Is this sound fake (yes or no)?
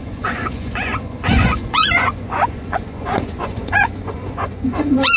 yes